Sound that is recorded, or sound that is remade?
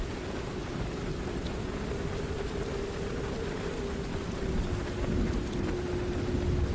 recorded